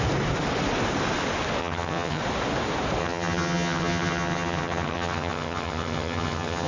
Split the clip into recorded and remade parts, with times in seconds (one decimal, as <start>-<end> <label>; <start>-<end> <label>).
0.0-1.6 recorded; 1.6-2.2 remade; 2.2-3.0 recorded; 3.0-6.7 remade